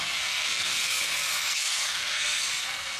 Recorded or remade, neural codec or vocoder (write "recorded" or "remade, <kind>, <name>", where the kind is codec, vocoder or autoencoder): remade, codec, SNAC